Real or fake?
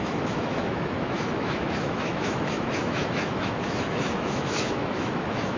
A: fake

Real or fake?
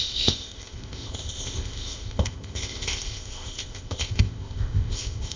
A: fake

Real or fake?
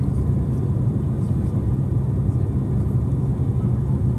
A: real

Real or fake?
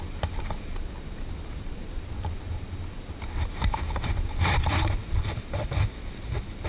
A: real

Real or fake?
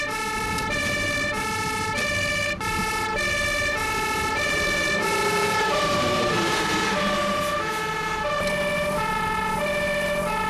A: fake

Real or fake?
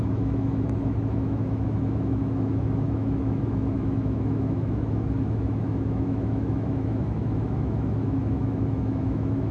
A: fake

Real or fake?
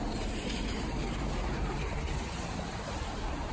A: fake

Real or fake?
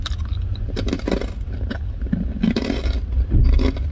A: real